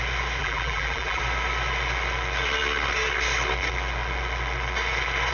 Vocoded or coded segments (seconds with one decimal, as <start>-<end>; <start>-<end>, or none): 0.4-1.2